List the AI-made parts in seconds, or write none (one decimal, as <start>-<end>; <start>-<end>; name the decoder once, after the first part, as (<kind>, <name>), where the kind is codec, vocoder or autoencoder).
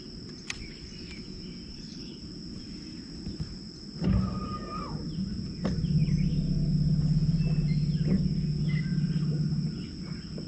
1.7-2.2 (codec, HILCodec)